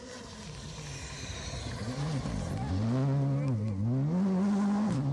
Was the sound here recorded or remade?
recorded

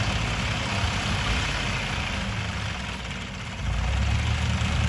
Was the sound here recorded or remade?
recorded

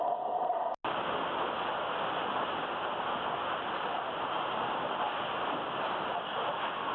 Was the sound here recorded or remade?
recorded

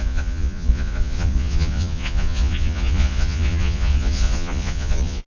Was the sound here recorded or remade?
remade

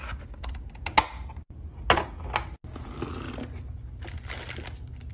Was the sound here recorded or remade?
recorded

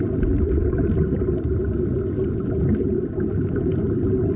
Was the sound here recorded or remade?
recorded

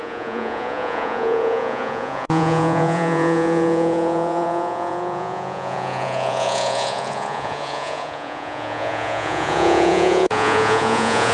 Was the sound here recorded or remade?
remade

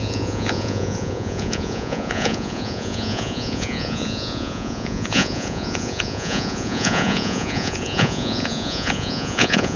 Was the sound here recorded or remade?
remade